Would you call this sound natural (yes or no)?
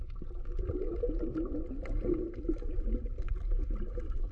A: yes